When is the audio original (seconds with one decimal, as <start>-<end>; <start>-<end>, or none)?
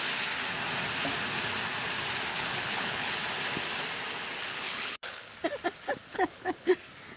0.0-2.3; 3.1-4.5; 5.3-6.1; 6.7-7.2